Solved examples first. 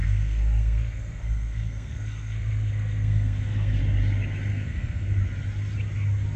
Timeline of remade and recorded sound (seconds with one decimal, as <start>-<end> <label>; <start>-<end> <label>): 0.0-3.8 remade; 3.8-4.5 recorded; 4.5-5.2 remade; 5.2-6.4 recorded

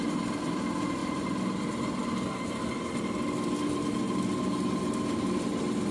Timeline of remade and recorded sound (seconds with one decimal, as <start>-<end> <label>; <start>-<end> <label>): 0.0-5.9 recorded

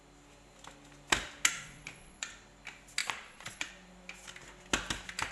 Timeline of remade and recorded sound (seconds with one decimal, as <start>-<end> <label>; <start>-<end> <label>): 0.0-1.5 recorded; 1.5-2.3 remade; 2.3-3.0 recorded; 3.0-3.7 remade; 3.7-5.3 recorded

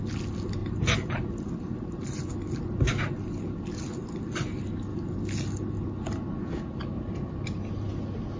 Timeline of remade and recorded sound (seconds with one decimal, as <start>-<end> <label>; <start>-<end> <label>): 0.0-0.6 recorded; 0.6-2.6 remade; 2.6-8.4 recorded

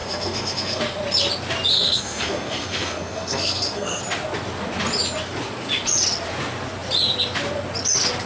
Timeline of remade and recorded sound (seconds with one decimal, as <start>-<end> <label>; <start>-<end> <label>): 0.0-0.8 remade; 0.8-1.7 recorded; 1.7-4.0 remade; 4.0-8.3 recorded

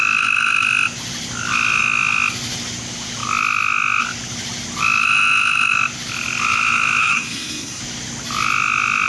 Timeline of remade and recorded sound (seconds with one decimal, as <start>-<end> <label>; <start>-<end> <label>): 0.0-7.0 recorded; 7.0-7.8 remade; 7.8-9.1 recorded

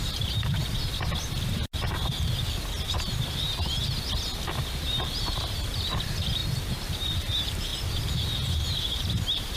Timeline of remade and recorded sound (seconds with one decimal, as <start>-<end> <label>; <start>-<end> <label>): 0.0-0.6 remade; 0.6-4.6 recorded; 4.6-7.7 remade; 7.7-8.8 recorded; 8.8-9.6 remade